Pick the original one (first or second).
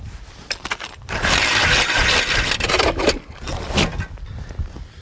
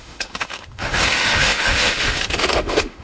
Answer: first